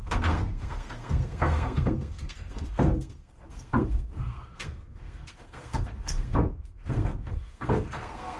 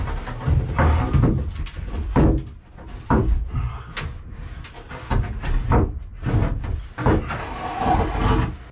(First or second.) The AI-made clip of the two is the first